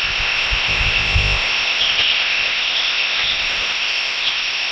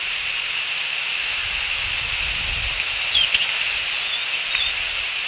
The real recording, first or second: second